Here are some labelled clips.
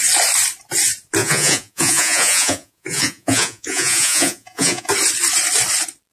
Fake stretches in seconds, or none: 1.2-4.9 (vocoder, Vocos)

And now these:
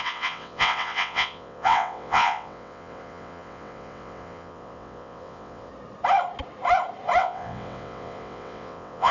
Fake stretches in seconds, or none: 0.0-5.7 (vocoder, WaveNeXt); 7.2-9.1

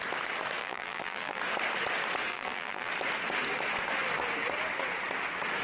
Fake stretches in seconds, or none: 0.6-1.4 (vocoder, BigVGAN v2); 2.3-2.9